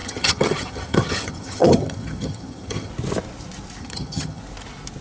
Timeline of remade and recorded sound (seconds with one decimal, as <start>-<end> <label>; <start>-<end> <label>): 0.0-2.9 remade; 2.9-3.8 recorded; 3.8-4.4 remade; 4.4-5.0 recorded